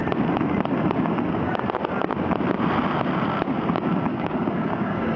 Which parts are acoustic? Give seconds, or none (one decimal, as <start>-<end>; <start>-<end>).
0.0-4.1